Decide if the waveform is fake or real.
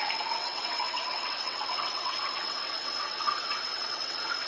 fake